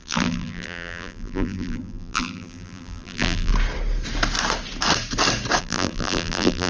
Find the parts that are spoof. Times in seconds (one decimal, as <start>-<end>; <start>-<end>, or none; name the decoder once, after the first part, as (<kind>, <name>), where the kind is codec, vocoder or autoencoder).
0.0-3.5 (vocoder, BigVGAN v2); 5.6-6.7